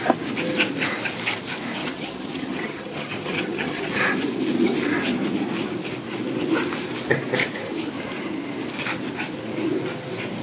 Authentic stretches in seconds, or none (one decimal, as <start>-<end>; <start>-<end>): 0.0-1.8; 3.9-10.4